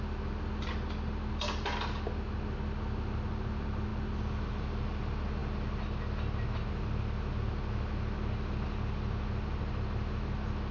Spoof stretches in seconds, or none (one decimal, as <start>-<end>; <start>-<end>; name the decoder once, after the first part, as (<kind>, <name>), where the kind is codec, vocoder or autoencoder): none